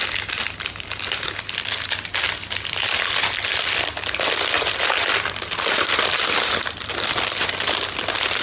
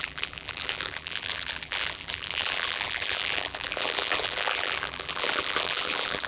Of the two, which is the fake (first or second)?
second